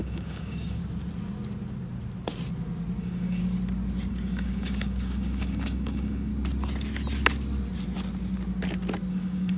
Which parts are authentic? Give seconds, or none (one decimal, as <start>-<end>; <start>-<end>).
0.8-3.0; 3.4-4.1; 6.3-9.1